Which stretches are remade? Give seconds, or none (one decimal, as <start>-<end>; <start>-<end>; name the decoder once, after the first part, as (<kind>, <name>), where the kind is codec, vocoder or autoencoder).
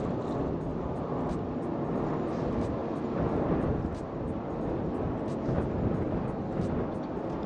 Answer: none